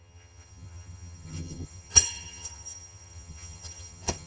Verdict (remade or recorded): remade